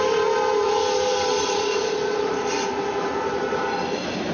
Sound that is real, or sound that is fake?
fake